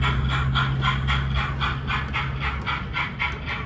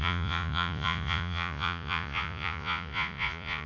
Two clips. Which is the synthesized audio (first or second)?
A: second